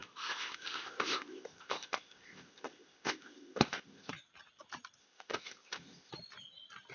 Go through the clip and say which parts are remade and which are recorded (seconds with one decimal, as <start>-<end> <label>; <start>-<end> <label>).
0.0-4.1 remade; 4.1-5.0 recorded; 5.0-6.1 remade; 6.1-6.9 recorded